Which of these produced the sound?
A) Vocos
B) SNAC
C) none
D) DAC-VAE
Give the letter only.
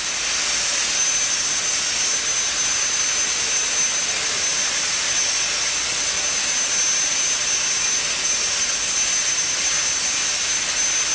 C